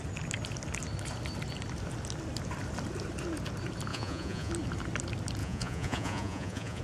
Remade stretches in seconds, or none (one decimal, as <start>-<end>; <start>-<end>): 3.9-4.5; 5.4-6.8